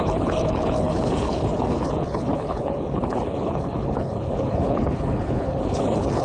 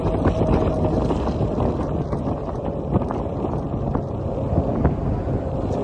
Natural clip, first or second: second